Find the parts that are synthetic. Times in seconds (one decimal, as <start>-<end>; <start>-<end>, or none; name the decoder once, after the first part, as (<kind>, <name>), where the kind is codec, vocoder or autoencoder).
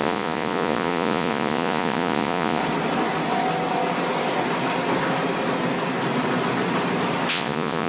0.0-2.6 (vocoder, Vocos); 7.3-7.9